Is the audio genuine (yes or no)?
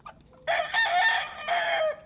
yes